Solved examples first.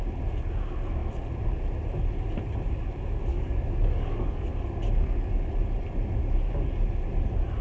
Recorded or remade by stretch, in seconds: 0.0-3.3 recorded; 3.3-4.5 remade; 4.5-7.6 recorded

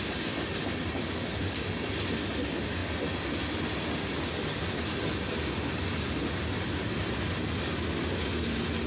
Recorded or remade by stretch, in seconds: 0.0-8.9 recorded